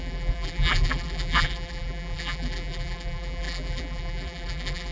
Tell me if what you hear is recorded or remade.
remade